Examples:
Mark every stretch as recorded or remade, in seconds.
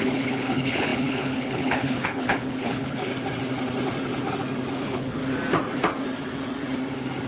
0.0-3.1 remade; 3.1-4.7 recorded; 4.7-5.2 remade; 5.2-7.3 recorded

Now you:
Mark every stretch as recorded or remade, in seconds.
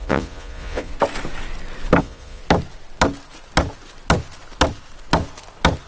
0.0-0.9 remade; 0.9-2.0 recorded; 2.0-2.4 remade; 2.4-5.9 recorded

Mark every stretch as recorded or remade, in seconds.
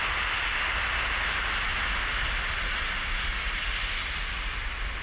0.0-5.0 recorded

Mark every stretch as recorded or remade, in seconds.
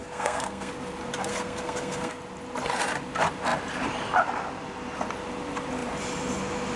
0.0-0.7 remade; 0.7-1.3 recorded; 1.3-2.1 remade; 2.1-6.8 recorded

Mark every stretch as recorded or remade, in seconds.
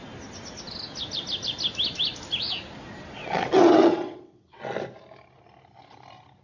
0.0-3.2 recorded; 3.2-4.6 remade; 4.6-6.4 recorded